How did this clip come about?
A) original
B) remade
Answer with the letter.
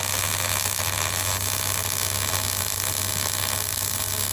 A